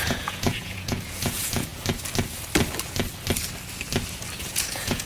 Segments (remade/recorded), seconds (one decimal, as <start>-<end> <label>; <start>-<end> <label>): 0.0-1.7 remade; 1.7-4.4 recorded; 4.4-5.1 remade